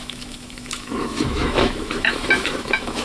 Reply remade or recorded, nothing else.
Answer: remade